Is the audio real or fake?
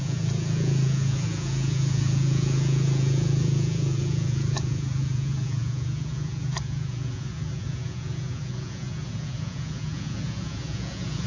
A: fake